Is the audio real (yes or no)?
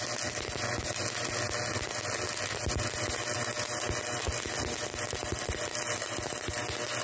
yes